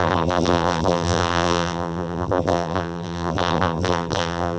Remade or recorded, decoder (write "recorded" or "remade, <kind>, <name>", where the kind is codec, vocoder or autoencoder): remade, vocoder, BigVGAN v2